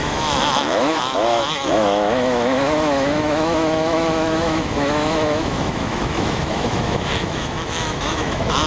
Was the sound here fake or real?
fake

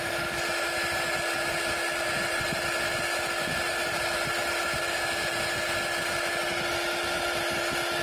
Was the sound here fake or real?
real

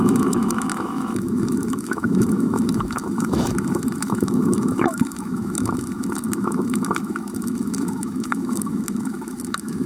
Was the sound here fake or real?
fake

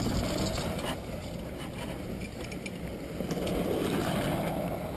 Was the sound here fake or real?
real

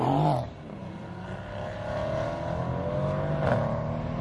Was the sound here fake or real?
real